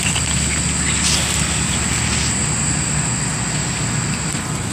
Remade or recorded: recorded